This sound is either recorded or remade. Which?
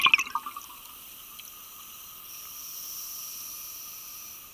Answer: recorded